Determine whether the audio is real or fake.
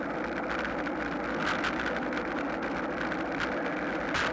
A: real